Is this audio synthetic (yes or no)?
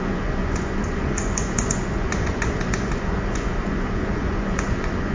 yes